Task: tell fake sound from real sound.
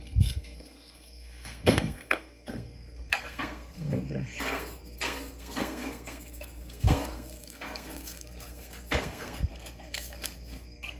fake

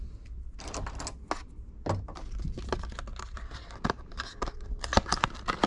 real